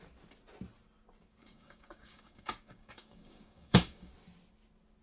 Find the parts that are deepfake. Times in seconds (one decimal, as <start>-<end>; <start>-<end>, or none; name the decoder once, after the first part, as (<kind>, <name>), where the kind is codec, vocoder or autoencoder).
1.4-4.1 (codec, DAC)